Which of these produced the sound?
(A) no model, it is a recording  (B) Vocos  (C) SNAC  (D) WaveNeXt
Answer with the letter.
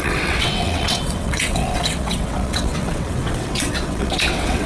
D